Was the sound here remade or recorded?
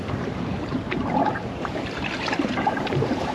remade